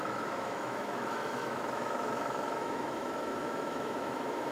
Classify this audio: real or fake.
fake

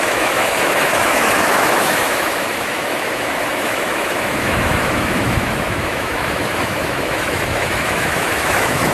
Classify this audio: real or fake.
fake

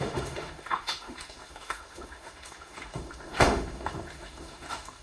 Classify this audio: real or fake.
fake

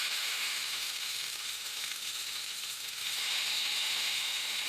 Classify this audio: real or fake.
fake